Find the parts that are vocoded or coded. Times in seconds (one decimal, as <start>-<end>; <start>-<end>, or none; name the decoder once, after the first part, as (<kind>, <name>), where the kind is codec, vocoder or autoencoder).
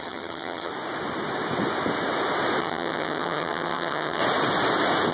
0.0-0.7 (vocoder, HiFi-GAN); 2.6-4.2